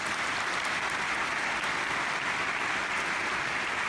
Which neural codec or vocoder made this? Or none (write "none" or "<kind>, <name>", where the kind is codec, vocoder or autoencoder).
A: vocoder, BigVGAN v2